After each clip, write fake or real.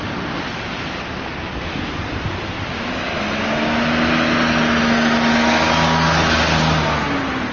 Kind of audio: real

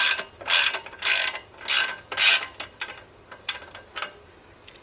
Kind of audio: real